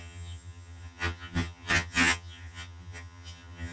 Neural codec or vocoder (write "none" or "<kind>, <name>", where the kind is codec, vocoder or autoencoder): vocoder, HiFi-GAN